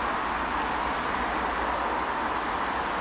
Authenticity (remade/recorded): recorded